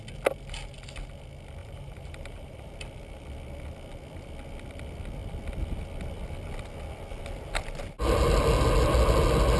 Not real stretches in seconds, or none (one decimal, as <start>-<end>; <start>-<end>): 1.6-2.7